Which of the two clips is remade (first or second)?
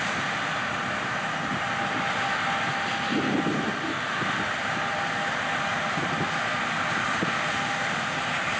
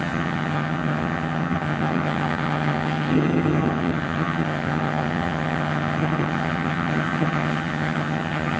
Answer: second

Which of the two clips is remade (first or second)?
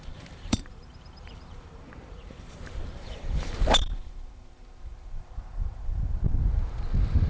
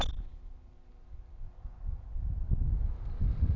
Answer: first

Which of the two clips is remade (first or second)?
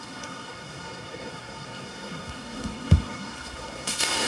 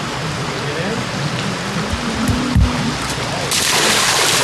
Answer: first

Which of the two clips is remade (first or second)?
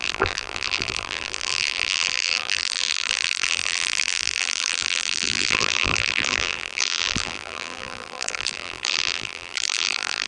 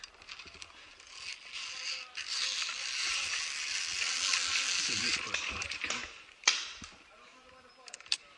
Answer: first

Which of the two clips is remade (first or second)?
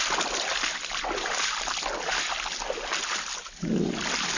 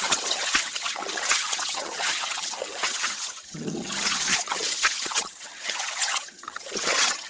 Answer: second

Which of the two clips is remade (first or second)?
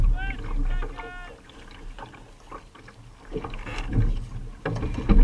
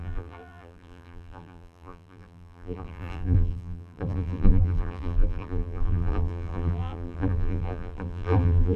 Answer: second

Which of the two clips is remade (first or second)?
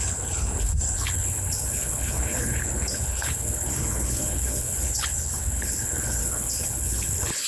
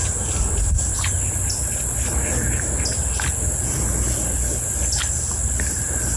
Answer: first